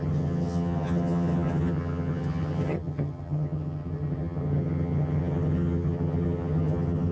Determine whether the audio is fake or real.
fake